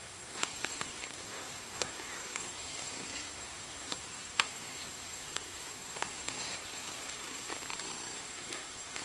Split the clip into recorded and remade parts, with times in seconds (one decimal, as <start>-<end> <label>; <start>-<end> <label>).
0.0-7.5 remade; 7.5-8.2 recorded; 8.2-9.0 remade